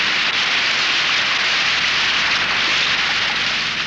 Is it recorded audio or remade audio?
recorded